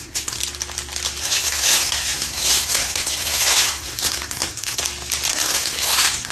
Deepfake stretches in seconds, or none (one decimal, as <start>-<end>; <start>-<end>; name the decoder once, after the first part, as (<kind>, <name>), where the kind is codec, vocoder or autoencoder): 0.0-0.4 (codec, SNAC); 1.2-4.8; 5.3-6.3